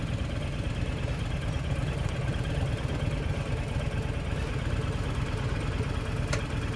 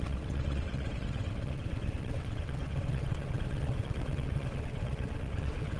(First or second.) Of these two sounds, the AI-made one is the second